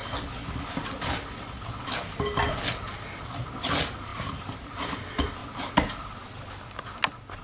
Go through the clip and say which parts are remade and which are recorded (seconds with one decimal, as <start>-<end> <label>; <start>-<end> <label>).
0.0-4.1 recorded; 4.1-5.0 remade; 5.0-5.4 recorded; 5.4-6.3 remade; 6.3-7.4 recorded